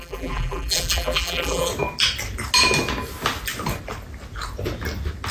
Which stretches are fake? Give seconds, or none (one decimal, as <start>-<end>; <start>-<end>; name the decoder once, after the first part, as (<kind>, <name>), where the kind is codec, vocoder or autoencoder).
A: 0.0-1.7 (vocoder, BigVGAN v2)